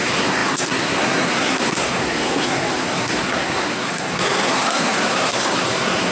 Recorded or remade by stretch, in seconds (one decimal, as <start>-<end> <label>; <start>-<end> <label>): 0.0-6.1 remade